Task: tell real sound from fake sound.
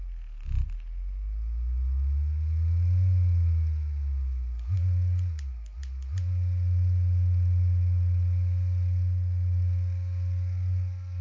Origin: real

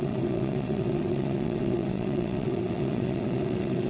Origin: fake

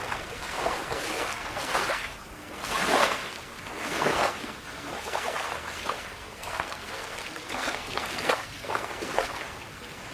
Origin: fake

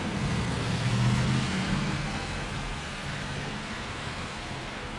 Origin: fake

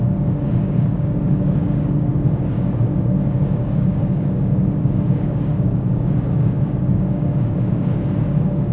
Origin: fake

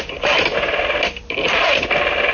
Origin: real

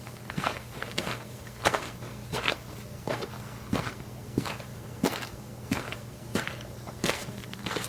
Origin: fake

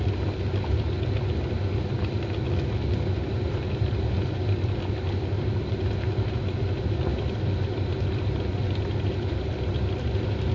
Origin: real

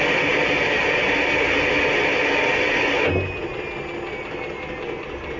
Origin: real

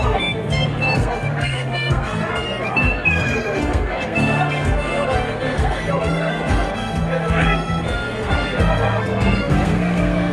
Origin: fake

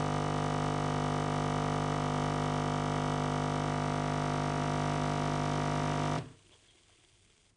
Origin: real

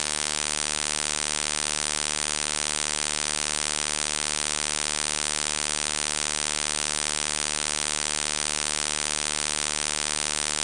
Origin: fake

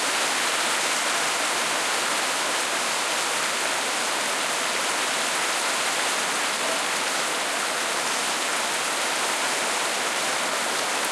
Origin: real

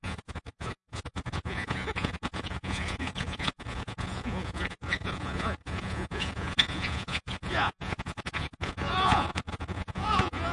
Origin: fake